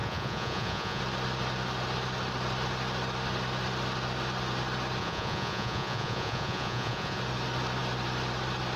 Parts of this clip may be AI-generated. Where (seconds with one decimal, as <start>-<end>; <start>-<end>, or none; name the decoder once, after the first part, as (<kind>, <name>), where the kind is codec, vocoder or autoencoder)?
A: 0.0-1.0 (vocoder, Vocos); 5.0-7.2